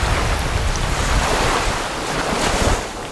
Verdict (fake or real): real